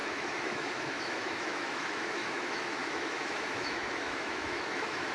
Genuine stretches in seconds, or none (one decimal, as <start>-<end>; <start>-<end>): none

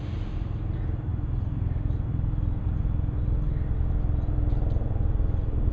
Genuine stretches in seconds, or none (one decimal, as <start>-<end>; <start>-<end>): 0.0-5.7

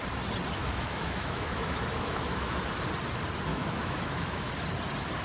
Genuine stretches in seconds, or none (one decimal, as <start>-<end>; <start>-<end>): 0.0-0.6; 2.6-3.5; 4.5-5.2

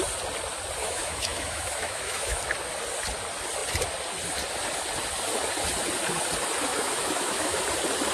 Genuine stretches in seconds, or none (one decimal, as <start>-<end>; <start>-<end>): 0.0-0.8; 2.4-6.7; 7.6-8.1

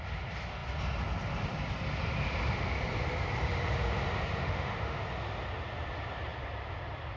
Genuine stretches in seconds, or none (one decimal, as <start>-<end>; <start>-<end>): 0.0-4.4; 5.0-7.2